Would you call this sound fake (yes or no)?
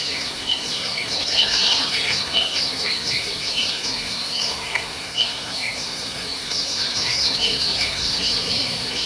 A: yes